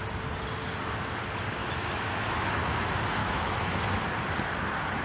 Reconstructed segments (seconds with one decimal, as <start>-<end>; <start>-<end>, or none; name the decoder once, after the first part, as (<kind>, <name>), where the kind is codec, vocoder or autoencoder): 1.6-2.8 (autoencoder, DAC-VAE); 3.2-3.7